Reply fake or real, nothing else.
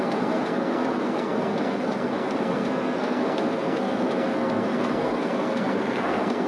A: fake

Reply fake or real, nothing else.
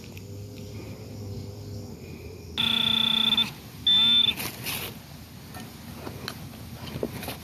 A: real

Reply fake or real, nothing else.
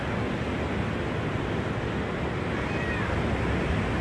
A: real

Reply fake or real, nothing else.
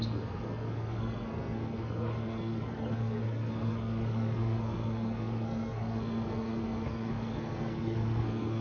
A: fake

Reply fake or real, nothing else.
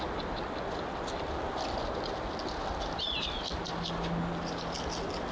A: real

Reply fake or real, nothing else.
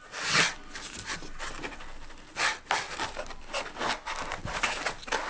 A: real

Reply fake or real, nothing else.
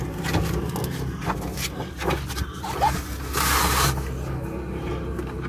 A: real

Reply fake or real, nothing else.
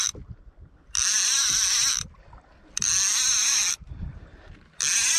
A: real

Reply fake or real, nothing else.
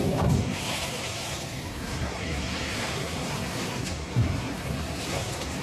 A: fake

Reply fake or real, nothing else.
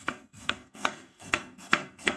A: fake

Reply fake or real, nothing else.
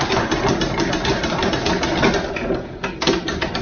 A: real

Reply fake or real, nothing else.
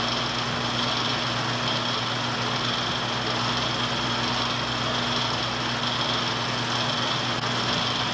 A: real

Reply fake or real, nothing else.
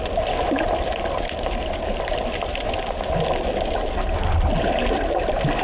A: real